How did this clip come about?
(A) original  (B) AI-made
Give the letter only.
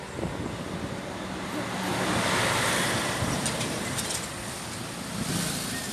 A